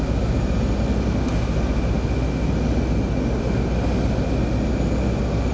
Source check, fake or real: real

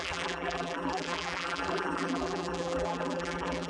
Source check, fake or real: fake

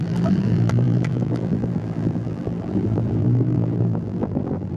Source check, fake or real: fake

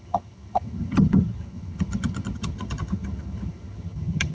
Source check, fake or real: fake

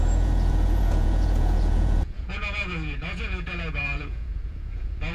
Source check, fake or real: fake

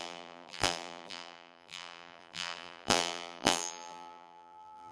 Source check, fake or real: fake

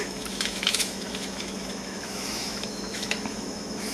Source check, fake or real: fake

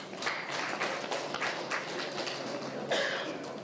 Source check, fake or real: real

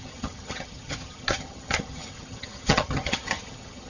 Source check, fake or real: fake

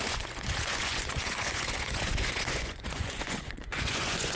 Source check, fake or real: fake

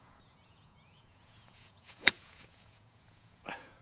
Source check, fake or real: fake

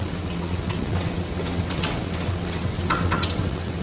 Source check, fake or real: fake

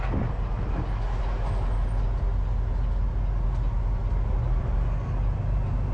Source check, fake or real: real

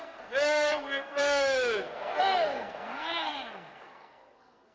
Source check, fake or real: fake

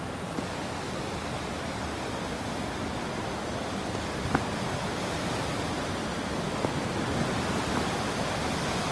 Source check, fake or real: real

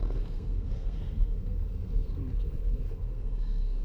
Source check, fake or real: fake